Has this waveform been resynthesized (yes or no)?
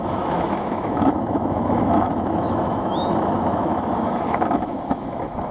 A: yes